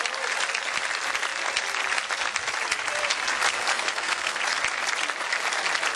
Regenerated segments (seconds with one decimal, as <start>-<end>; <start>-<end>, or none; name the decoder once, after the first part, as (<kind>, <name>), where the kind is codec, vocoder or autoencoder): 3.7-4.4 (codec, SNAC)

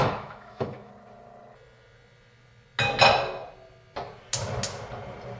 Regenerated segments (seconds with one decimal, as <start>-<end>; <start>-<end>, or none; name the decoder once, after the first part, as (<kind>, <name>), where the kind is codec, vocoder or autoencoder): 0.0-0.9 (autoencoder, DAC-VAE)

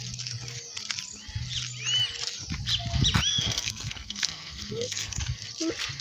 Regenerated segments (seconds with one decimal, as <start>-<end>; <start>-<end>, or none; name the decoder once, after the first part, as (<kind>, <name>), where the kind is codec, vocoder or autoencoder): 3.3-5.2 (codec, SNAC)